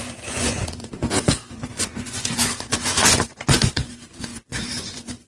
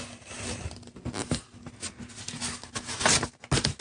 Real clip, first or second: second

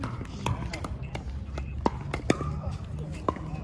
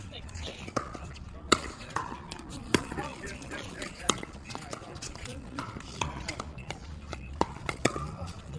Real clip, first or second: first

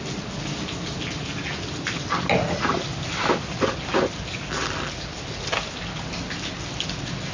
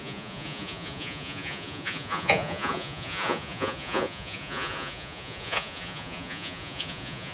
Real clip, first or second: first